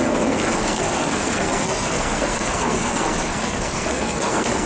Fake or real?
fake